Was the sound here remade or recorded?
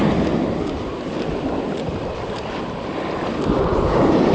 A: recorded